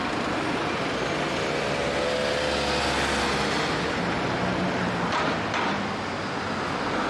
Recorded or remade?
recorded